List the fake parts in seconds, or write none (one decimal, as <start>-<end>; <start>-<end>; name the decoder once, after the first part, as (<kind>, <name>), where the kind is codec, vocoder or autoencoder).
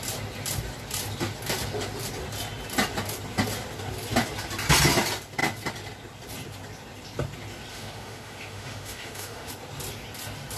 7.7-9.5 (autoencoder, DAC-VAE)